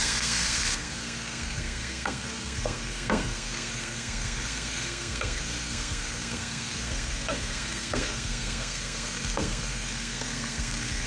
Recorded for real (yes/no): no